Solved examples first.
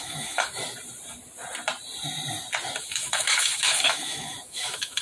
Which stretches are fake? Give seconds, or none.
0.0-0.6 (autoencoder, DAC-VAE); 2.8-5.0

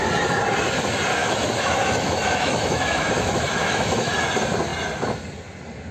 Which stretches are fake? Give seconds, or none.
1.2-4.1 (autoencoder, DAC-VAE)

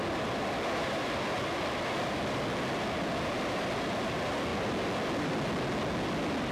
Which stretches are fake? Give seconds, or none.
none

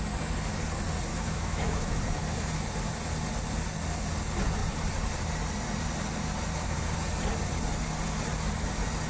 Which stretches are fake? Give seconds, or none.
1.1-2.0 (autoencoder, DAC-VAE)

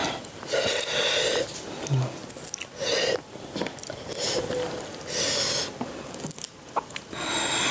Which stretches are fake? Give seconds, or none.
none

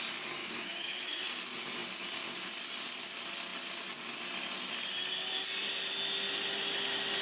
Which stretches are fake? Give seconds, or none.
0.4-1.3 (autoencoder, DAC-VAE)

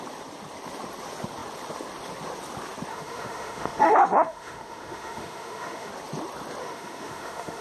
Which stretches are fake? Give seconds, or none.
2.9-5.9 (autoencoder, DAC-VAE); 6.6-7.6

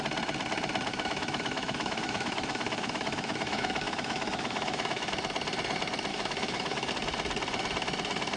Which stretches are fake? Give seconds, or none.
0.9-5.1 (autoencoder, DAC-VAE); 6.1-6.9